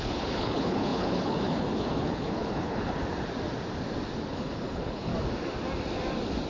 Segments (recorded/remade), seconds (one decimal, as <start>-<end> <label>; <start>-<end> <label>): 0.0-3.0 remade; 3.0-4.3 recorded; 4.3-5.1 remade; 5.1-6.5 recorded